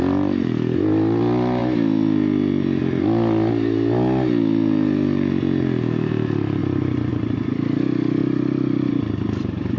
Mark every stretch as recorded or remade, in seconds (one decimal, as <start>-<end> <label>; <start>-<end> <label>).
0.0-9.8 recorded